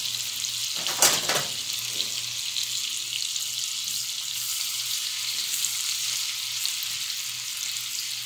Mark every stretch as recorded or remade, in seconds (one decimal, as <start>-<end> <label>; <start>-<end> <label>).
0.0-4.5 recorded; 4.5-6.8 remade; 6.8-8.3 recorded